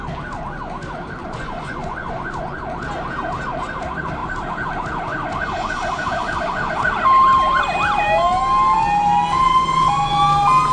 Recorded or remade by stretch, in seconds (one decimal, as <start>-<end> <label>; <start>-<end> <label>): 0.0-1.2 recorded; 1.2-2.6 remade; 2.6-10.7 recorded